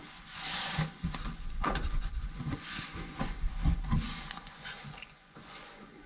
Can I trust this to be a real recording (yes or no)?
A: no